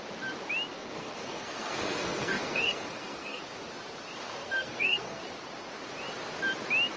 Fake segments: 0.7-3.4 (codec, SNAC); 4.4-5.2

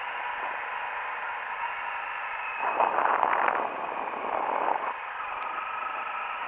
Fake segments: none

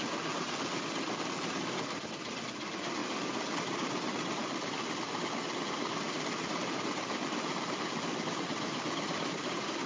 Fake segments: none